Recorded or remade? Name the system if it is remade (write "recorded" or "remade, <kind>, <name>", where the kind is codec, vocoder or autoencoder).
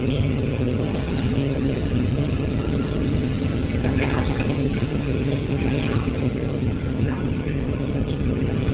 remade, vocoder, HiFi-GAN